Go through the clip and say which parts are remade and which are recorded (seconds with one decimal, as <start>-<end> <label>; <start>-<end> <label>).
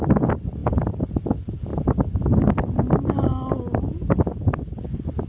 0.0-5.3 recorded